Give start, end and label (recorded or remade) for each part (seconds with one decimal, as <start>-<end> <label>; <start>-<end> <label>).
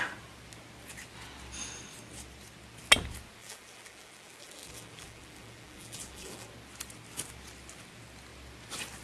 0.0-3.4 recorded; 3.4-6.5 remade; 6.5-9.0 recorded